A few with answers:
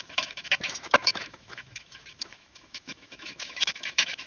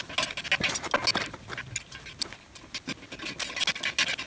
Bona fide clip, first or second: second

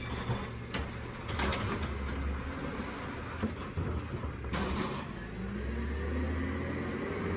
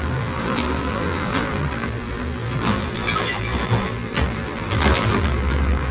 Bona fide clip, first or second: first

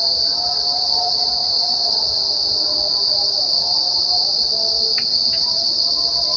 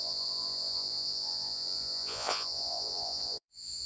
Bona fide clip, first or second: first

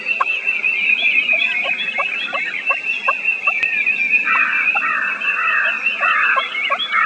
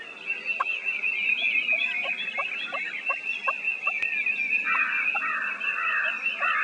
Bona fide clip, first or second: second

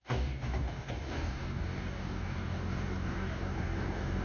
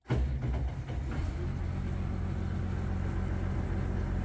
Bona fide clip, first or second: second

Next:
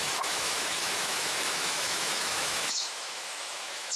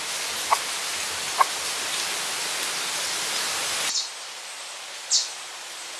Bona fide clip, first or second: second